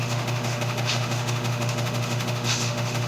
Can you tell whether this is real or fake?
fake